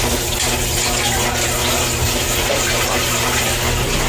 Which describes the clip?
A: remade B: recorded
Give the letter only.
B